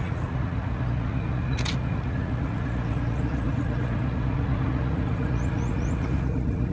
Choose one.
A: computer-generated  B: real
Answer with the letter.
A